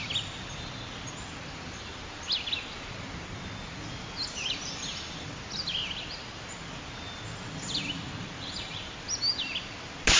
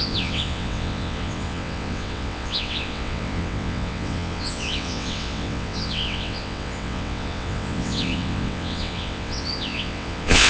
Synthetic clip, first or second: second